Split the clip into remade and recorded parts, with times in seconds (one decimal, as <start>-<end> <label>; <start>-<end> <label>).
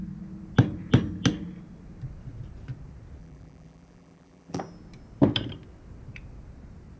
0.0-3.2 recorded; 3.2-4.6 remade; 4.6-7.0 recorded